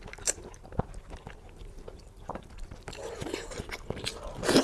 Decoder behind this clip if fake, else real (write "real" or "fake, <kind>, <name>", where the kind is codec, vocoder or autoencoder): real